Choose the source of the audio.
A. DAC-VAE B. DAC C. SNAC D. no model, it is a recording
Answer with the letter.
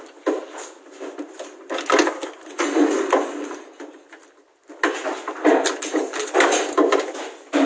D